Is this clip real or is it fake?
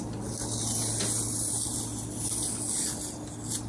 real